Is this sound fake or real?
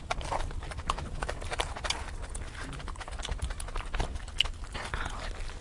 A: real